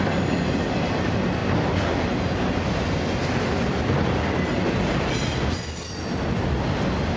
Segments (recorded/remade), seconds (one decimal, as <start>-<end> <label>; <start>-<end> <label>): 0.0-7.2 recorded